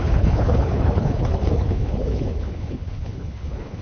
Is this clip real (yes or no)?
no